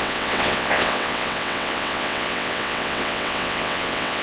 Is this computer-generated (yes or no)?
yes